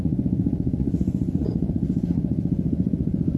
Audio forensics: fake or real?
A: fake